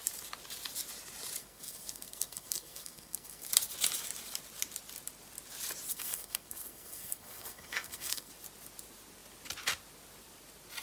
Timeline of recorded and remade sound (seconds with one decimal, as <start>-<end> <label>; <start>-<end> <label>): 0.0-1.4 recorded; 1.4-3.5 remade; 3.5-5.9 recorded; 5.9-8.3 remade; 8.3-10.8 recorded